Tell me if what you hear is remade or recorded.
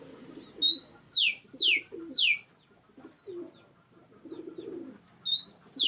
recorded